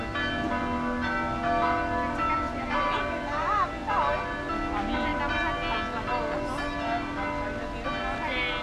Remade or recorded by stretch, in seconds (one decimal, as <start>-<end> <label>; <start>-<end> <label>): 0.0-8.6 recorded